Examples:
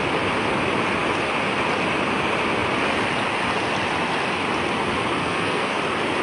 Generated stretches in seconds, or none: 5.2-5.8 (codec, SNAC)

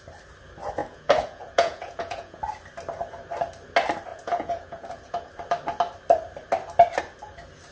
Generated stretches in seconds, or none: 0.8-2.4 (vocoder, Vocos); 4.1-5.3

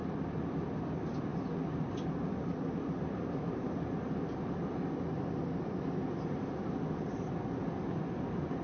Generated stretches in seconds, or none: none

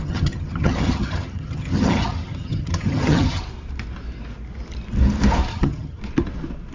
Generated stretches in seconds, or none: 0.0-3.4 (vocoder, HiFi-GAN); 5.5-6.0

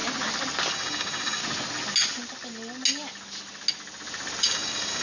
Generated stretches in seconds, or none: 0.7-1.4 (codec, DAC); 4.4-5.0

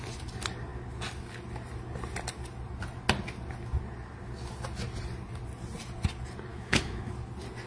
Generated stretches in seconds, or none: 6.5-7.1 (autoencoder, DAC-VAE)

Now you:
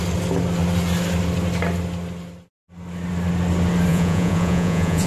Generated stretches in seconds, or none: 3.9-5.1 (vocoder, Vocos)